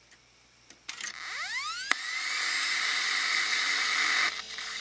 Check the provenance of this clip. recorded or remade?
recorded